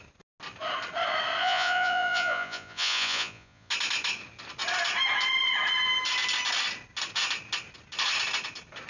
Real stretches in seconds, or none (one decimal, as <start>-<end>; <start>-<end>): 0.0-1.4; 3.7-8.9